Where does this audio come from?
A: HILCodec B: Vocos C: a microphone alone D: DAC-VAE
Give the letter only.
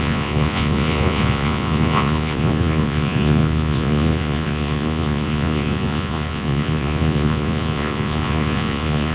B